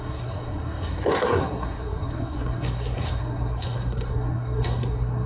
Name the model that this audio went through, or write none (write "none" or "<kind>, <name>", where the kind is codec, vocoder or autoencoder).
codec, SNAC